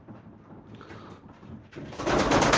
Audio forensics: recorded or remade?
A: recorded